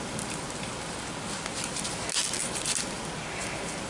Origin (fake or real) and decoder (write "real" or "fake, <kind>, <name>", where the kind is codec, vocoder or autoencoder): real